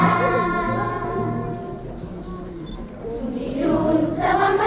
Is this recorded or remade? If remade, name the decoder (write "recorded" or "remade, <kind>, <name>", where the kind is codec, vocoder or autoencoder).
recorded